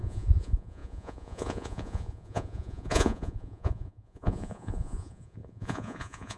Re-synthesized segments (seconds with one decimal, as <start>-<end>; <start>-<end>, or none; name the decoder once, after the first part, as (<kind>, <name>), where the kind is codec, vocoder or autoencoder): 0.0-6.4 (vocoder, Vocos)